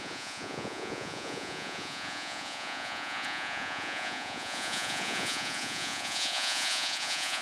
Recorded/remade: remade